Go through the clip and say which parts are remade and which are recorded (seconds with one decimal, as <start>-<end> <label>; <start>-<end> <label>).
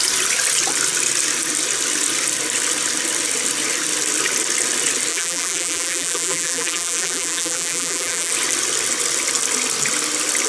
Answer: 0.0-5.1 recorded; 5.1-8.3 remade; 8.3-10.5 recorded